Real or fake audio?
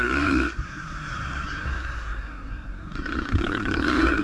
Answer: fake